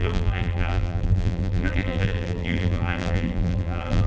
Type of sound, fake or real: fake